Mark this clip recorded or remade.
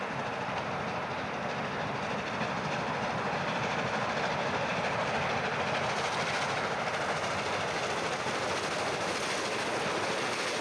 recorded